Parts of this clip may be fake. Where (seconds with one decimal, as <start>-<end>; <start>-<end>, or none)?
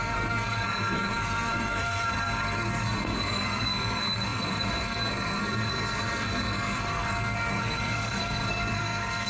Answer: 0.0-9.3